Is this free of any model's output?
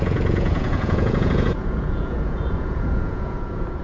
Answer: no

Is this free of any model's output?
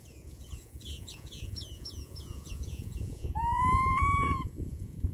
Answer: no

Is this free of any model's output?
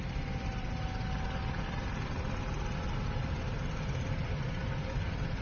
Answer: yes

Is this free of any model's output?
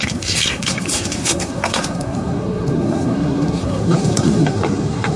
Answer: no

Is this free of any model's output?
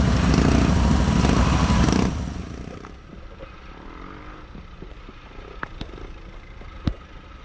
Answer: yes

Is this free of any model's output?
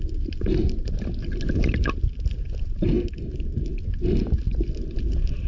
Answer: yes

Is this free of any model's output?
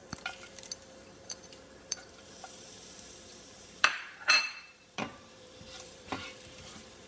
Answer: no